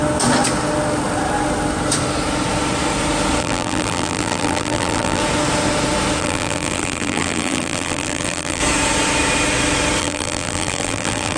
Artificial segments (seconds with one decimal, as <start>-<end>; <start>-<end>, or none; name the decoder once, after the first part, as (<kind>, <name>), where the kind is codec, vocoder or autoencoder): 3.4-5.2 (vocoder, BigVGAN v2); 6.2-8.6; 10.0-11.4

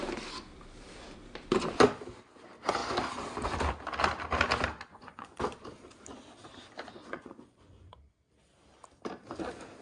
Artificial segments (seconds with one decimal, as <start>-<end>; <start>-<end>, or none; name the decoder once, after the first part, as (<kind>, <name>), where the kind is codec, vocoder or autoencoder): 4.9-5.4 (vocoder, Vocos); 7.0-8.2